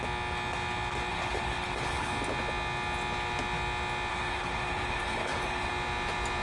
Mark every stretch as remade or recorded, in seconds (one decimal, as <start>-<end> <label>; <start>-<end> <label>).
0.0-1.1 recorded; 1.1-2.1 remade; 2.1-4.1 recorded; 4.1-5.7 remade; 5.7-6.4 recorded